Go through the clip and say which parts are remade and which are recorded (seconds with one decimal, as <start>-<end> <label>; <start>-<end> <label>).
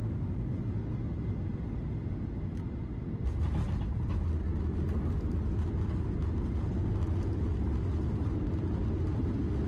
0.0-9.7 recorded